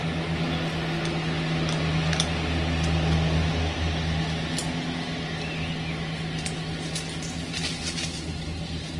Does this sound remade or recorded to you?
recorded